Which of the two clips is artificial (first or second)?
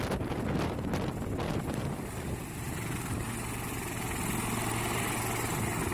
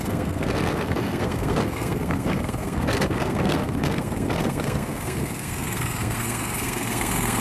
second